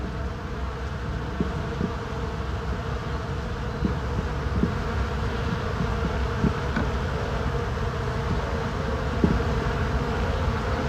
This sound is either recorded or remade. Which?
recorded